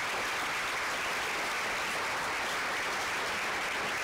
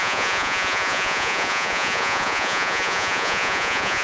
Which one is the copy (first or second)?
second